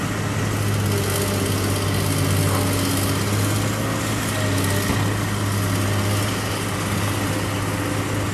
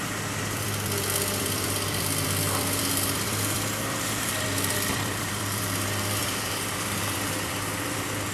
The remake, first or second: second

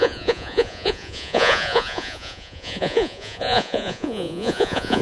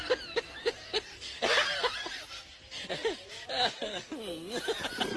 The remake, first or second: first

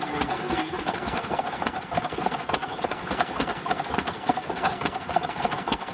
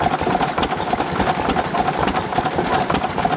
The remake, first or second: first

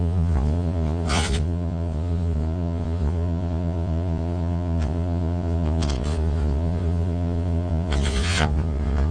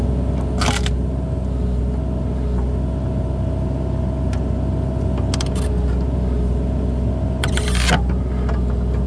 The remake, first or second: first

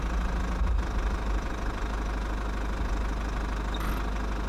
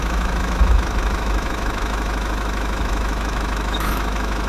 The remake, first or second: second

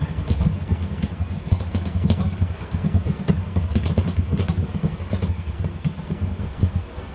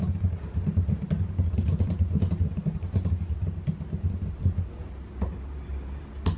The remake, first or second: first